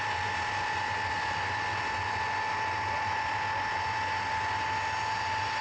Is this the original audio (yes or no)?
yes